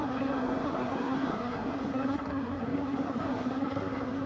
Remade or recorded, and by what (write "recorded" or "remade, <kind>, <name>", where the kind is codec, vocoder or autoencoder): remade, codec, SNAC